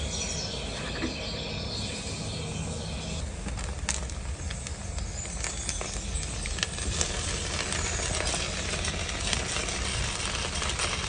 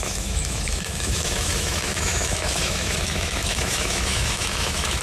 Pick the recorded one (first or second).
first